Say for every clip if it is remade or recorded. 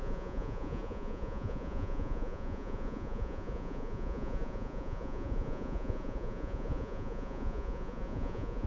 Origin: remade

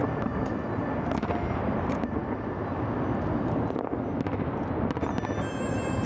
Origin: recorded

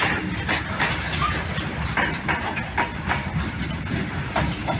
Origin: recorded